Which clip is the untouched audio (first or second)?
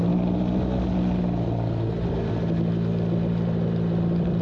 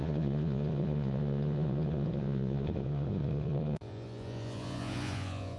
first